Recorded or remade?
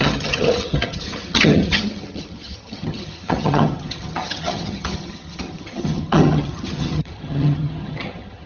remade